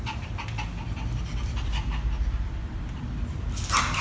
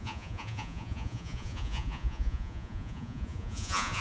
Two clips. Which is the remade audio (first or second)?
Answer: second